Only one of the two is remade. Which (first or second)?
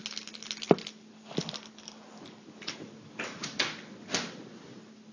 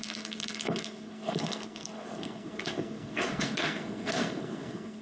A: second